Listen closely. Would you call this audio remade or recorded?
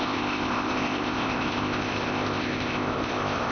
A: remade